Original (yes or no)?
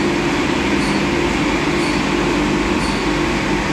yes